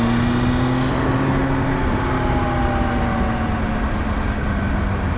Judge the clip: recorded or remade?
recorded